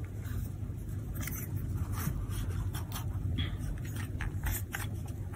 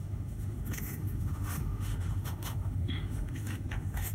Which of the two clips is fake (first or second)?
second